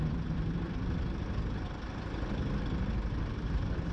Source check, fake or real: fake